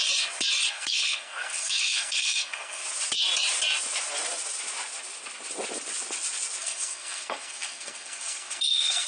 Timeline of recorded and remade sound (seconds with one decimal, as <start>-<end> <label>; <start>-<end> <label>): 0.0-0.7 recorded; 0.7-2.8 remade; 2.8-6.6 recorded; 6.6-9.1 remade